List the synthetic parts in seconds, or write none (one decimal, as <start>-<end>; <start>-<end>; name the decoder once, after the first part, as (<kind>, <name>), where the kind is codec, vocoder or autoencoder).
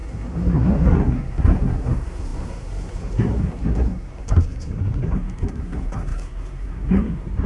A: 0.0-7.5 (codec, SNAC)